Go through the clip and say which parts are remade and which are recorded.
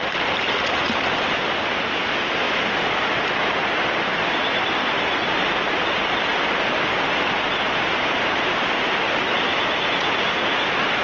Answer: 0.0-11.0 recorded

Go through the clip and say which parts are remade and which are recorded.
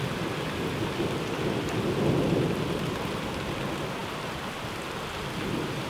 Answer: 0.0-5.9 recorded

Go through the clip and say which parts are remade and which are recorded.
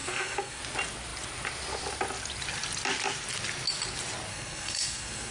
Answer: 0.0-0.6 remade; 0.6-4.3 recorded; 4.3-5.3 remade